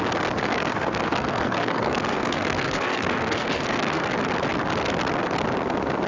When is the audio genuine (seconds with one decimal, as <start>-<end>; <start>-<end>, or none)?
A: 0.0-0.4; 4.1-6.1